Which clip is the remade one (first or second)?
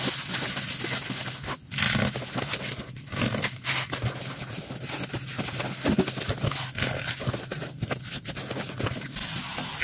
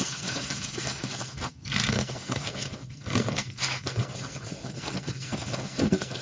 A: second